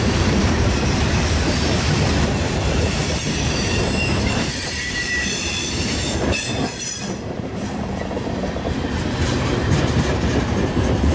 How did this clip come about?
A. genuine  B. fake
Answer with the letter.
B